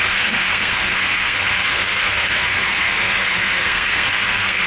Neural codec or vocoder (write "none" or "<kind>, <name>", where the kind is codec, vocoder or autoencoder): codec, SNAC